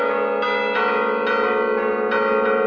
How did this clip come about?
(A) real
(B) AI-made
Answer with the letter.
A